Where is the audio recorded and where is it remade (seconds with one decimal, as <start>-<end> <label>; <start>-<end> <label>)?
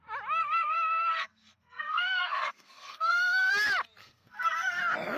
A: 0.0-0.4 recorded; 0.4-3.5 remade; 3.5-4.0 recorded; 4.0-4.8 remade; 4.8-5.2 recorded